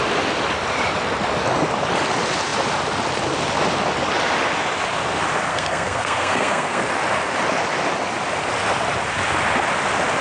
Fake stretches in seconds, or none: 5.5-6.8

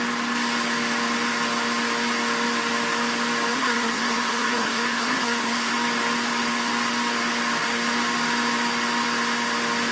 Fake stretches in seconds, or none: 3.5-5.7

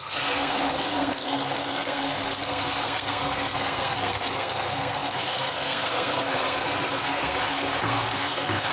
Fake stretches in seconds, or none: 0.0-8.7

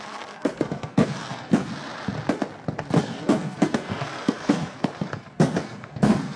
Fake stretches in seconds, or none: 0.0-1.7; 3.0-6.4

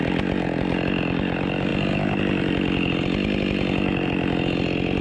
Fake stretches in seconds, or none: none

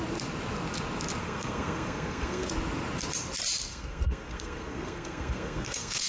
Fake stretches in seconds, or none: 1.2-2.5; 3.7-6.1

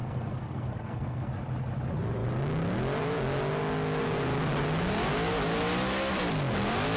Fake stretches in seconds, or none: 0.0-1.3